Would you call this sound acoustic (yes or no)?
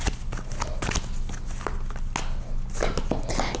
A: yes